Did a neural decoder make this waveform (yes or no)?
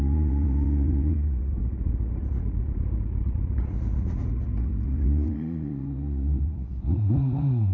yes